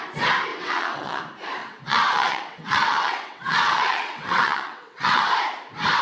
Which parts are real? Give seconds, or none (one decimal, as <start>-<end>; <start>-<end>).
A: 0.0-0.5; 1.2-1.6; 5.2-6.0